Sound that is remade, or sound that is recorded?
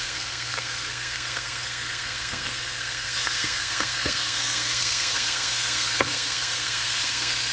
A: remade